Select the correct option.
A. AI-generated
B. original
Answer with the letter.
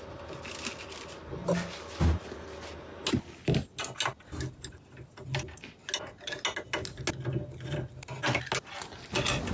B